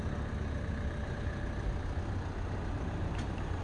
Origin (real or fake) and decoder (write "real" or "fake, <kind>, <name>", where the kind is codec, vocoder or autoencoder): real